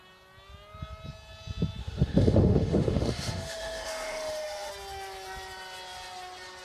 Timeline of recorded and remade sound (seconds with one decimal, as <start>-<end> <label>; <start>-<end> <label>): 0.0-1.8 recorded; 1.8-4.7 remade; 4.7-6.6 recorded